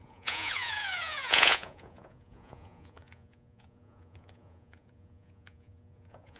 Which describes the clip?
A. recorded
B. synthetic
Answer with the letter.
B